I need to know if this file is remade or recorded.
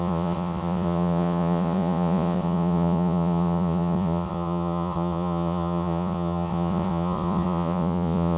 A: remade